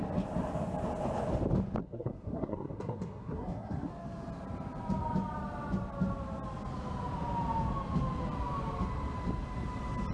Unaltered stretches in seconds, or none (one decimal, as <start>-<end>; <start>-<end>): 0.0-1.8; 3.9-10.1